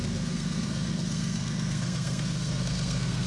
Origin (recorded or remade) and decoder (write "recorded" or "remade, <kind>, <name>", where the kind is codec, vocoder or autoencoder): remade, codec, SNAC